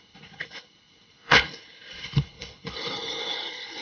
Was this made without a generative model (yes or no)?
no